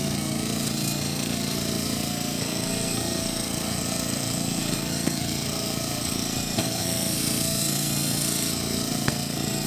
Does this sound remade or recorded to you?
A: remade